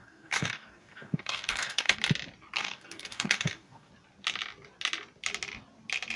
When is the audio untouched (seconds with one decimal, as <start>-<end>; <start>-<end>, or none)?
2.0-2.6; 3.9-6.2